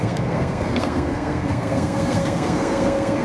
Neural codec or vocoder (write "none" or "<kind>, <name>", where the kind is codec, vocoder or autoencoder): codec, SNAC